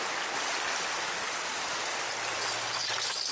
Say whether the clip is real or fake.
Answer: real